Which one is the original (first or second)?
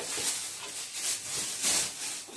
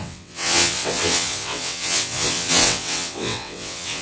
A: first